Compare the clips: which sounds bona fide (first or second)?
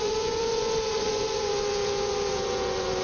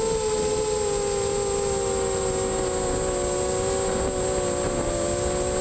second